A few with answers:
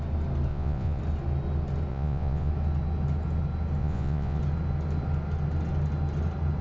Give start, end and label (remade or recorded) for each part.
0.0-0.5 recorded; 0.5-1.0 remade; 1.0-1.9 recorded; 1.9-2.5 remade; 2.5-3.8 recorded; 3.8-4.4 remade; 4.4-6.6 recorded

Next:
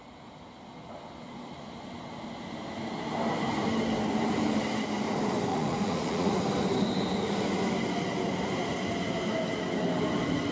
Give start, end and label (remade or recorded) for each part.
0.0-5.5 recorded; 5.5-6.4 remade; 6.4-10.5 recorded